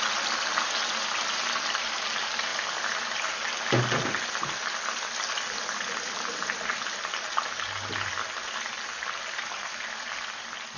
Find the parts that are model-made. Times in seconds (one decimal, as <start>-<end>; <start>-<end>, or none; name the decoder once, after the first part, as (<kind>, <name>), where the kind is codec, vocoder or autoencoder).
none